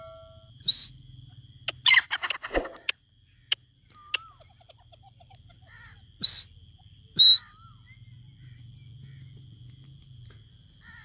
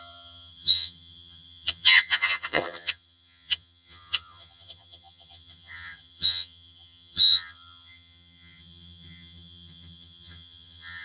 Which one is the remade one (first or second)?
second